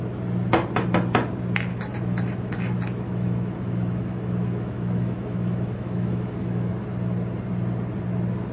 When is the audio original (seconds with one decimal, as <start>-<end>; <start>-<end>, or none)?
0.0-1.7; 6.7-8.5